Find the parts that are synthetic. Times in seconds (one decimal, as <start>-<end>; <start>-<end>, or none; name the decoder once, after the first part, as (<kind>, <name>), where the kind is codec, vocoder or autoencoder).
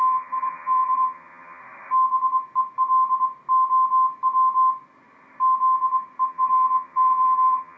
0.0-1.6 (vocoder, HiFi-GAN); 6.3-7.8